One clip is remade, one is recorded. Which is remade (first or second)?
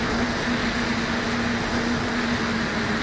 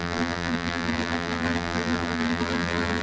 second